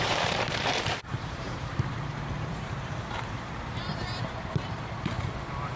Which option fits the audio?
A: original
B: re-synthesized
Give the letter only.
B